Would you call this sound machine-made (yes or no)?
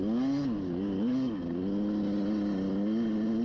no